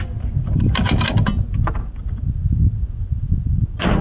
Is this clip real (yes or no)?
yes